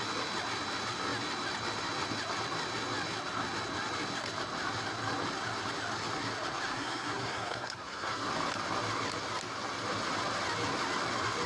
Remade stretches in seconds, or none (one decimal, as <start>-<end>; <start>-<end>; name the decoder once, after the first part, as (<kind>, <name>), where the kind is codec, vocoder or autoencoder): 6.7-8.3 (codec, SNAC)